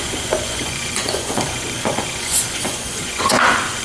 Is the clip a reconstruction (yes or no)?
yes